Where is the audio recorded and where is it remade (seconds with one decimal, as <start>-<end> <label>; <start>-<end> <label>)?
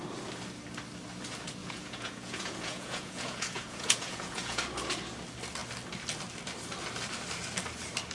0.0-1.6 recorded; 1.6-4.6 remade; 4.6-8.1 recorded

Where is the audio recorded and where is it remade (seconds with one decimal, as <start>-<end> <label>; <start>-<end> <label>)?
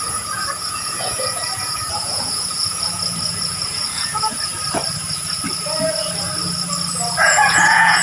0.0-4.5 remade; 4.5-7.2 recorded; 7.2-8.0 remade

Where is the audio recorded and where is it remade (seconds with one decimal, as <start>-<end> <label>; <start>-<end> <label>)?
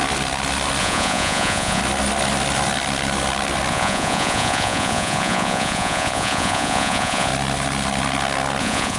0.0-0.8 recorded; 0.8-1.8 remade; 1.8-3.7 recorded; 3.7-7.3 remade; 7.3-8.6 recorded; 8.6-9.0 remade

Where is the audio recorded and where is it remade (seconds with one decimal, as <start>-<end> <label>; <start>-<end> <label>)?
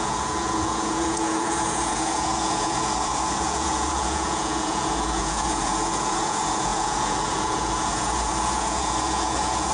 0.0-9.7 remade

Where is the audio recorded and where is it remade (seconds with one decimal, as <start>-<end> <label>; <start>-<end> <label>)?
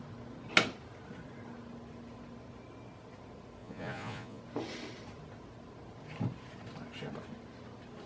0.0-3.6 recorded; 3.6-4.4 remade; 4.4-8.1 recorded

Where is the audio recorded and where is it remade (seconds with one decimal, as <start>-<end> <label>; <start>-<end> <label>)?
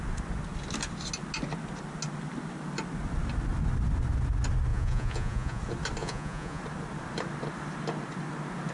0.0-4.7 recorded; 4.7-5.6 remade; 5.6-6.0 recorded; 6.0-6.6 remade; 6.6-8.7 recorded